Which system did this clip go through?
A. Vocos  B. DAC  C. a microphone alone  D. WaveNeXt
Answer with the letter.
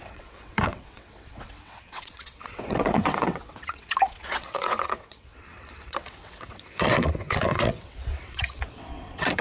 D